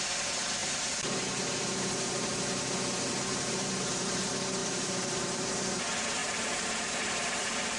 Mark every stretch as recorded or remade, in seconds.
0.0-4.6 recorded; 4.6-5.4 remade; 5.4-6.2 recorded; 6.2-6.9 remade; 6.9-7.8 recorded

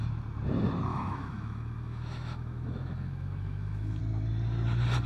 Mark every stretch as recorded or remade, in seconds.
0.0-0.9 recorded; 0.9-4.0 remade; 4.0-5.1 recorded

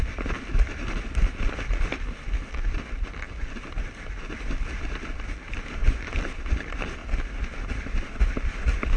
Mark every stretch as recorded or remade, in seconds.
0.0-9.0 recorded

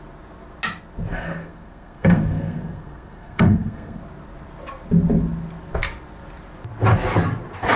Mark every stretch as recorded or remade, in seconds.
0.0-1.1 recorded; 1.1-4.0 remade; 4.0-7.8 recorded